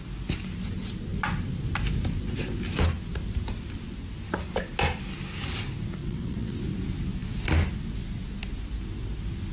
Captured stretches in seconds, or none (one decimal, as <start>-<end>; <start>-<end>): 0.0-6.0; 6.6-9.5